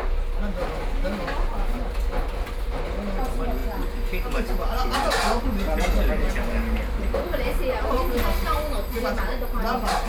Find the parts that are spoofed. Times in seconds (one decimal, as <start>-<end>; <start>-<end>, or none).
none